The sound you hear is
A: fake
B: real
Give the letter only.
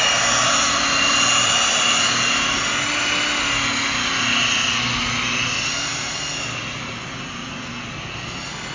B